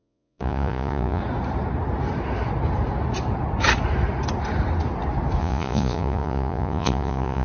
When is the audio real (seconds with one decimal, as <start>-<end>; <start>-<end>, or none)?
1.2-5.4